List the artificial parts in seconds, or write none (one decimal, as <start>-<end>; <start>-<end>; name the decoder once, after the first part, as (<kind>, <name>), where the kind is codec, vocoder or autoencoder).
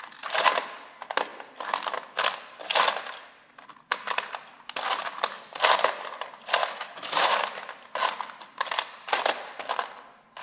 6.6-7.3 (autoencoder, DAC-VAE)